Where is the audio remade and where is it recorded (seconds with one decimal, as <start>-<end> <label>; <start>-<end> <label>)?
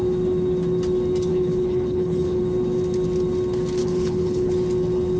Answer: 0.0-1.3 recorded; 1.3-2.4 remade; 2.4-3.8 recorded; 3.8-4.5 remade; 4.5-5.2 recorded